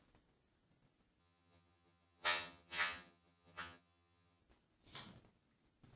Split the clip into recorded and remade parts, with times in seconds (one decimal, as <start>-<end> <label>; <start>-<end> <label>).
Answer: 0.0-1.2 recorded; 1.2-4.4 remade; 4.4-6.0 recorded